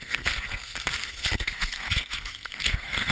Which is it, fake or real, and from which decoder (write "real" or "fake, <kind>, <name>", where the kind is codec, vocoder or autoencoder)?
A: fake, codec, SNAC